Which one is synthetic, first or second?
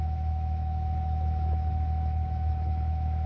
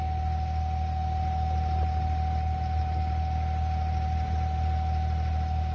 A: first